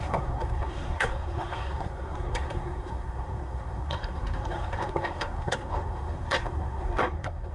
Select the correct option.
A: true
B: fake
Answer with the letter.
B